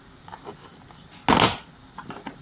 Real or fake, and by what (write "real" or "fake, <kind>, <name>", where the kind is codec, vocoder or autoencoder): real